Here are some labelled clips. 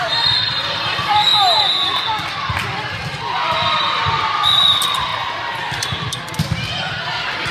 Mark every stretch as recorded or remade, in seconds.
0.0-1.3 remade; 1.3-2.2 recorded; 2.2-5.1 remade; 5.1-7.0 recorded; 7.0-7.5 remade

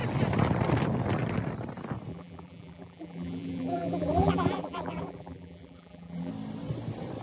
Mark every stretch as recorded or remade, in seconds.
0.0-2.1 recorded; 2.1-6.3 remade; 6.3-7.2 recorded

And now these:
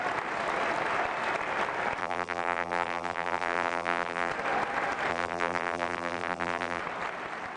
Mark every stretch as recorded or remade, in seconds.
0.0-2.0 recorded; 2.0-4.3 remade; 4.3-5.1 recorded; 5.1-6.8 remade; 6.8-7.6 recorded

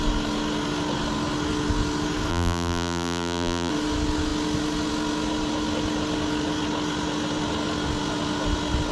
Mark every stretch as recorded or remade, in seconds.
0.0-2.3 recorded; 2.3-3.7 remade; 3.7-8.9 recorded

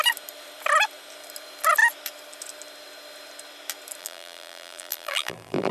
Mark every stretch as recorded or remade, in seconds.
0.0-4.0 recorded; 4.0-5.7 remade